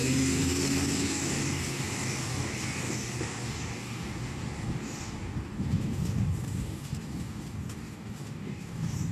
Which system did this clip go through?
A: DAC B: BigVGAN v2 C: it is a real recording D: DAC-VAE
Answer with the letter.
A